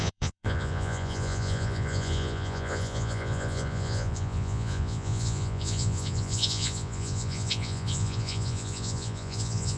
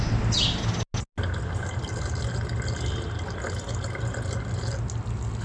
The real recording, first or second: second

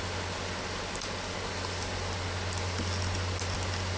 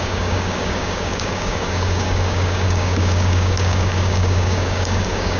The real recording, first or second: first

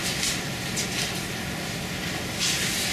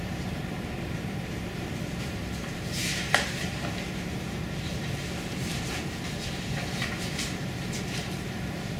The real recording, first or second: first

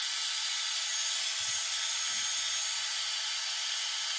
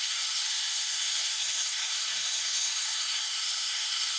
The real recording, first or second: first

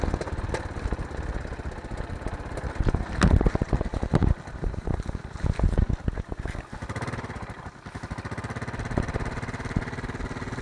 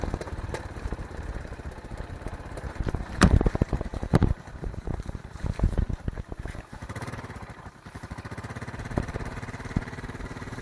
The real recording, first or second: first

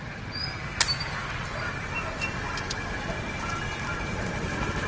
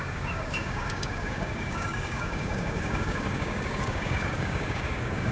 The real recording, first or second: first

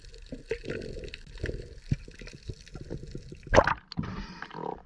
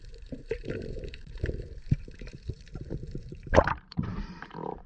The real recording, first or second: first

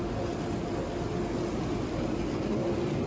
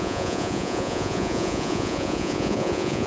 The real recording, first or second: first